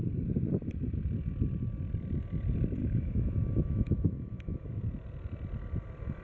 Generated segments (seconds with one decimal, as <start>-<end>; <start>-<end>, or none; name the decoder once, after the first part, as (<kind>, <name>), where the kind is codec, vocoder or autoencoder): 2.8-4.8 (autoencoder, DAC-VAE)